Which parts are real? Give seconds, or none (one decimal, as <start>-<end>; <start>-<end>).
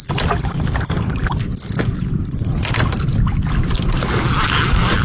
0.0-5.0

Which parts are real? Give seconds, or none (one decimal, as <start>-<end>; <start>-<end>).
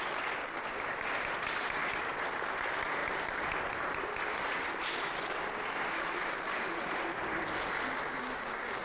0.0-8.2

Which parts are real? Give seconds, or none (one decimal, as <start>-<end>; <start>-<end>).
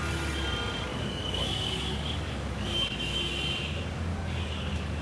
0.0-0.9; 3.2-4.1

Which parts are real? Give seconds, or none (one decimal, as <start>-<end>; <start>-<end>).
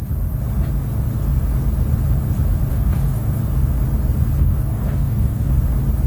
0.0-2.7; 3.4-4.4; 5.5-6.1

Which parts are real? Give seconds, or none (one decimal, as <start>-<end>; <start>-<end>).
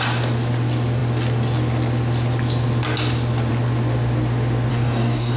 0.0-4.7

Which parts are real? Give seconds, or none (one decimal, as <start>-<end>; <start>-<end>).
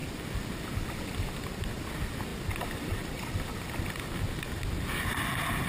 0.0-5.7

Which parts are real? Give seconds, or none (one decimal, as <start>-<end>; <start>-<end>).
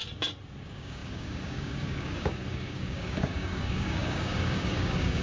0.0-0.6